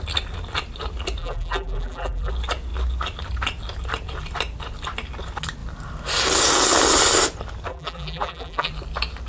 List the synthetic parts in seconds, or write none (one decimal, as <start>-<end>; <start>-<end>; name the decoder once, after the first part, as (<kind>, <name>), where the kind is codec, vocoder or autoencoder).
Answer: 1.2-2.3 (vocoder, BigVGAN v2); 7.7-8.7